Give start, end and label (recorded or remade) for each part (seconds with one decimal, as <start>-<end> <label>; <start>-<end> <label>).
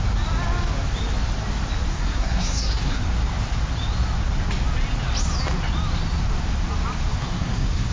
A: 0.0-1.9 recorded; 1.9-3.0 remade; 3.0-7.1 recorded; 7.1-7.9 remade